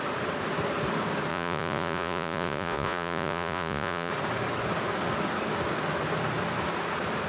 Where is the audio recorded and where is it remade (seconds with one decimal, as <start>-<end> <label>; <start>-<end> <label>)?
0.0-1.3 recorded; 1.3-4.1 remade; 4.1-7.3 recorded